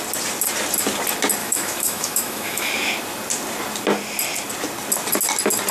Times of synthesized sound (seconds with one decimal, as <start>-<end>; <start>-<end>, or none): 1.4-2.7